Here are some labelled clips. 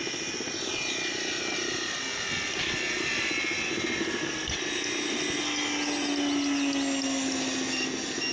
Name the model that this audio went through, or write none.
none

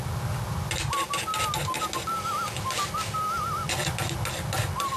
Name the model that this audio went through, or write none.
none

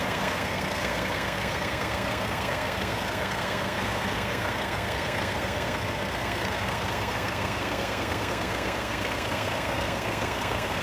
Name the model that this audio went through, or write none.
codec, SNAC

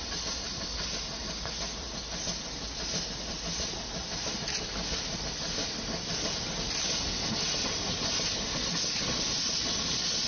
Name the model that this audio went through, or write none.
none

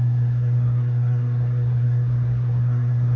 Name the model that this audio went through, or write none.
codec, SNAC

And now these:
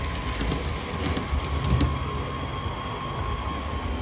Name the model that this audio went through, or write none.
none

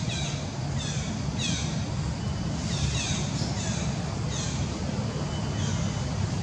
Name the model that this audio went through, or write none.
none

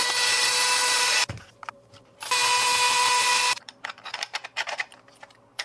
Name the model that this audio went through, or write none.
vocoder, BigVGAN v2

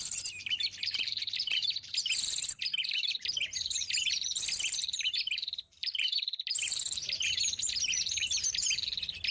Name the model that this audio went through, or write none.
vocoder, BigVGAN v2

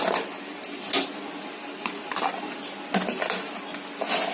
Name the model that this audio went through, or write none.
none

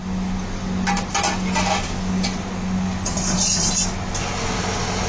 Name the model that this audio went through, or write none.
none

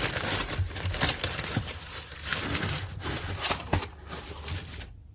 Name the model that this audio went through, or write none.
vocoder, BigVGAN v2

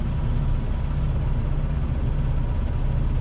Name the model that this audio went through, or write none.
none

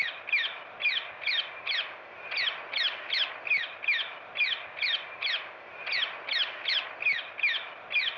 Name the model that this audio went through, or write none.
none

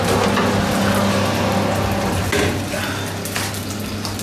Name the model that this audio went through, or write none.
none